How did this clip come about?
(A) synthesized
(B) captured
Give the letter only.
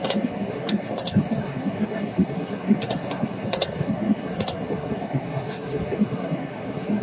A